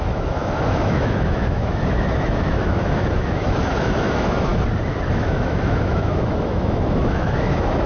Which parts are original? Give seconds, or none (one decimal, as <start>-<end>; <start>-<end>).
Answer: 4.5-5.1